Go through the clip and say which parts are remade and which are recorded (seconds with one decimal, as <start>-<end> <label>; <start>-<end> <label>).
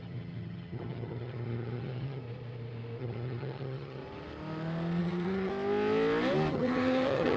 0.0-2.2 remade; 2.2-3.0 recorded; 3.0-4.0 remade; 4.0-5.0 recorded; 5.0-5.5 remade; 5.5-6.5 recorded; 6.5-7.4 remade